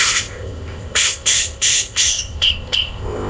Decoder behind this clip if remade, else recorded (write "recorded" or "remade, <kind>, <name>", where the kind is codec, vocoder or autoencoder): remade, codec, ZipCodec